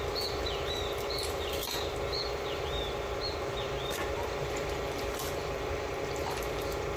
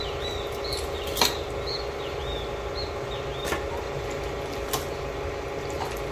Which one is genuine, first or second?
second